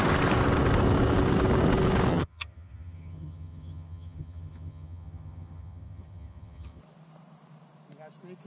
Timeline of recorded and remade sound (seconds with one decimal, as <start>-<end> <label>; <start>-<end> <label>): 0.0-2.1 recorded; 2.1-6.8 remade; 6.8-8.5 recorded